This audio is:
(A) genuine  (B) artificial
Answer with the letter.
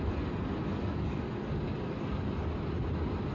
A